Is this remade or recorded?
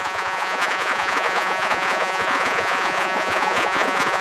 remade